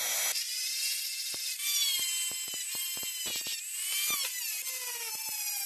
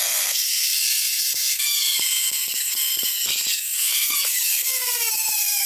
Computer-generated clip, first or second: second